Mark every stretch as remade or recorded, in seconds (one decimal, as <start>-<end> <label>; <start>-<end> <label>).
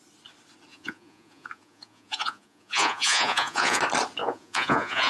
0.0-0.7 recorded; 0.7-3.8 remade; 3.8-4.2 recorded; 4.2-5.1 remade